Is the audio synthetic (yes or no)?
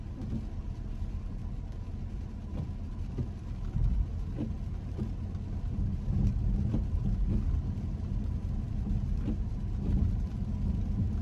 no